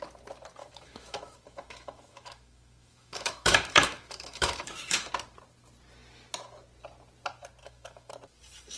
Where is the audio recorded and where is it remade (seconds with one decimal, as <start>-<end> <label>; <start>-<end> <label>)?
0.0-0.6 recorded; 0.6-5.1 remade; 5.1-7.6 recorded; 7.6-8.1 remade; 8.1-8.8 recorded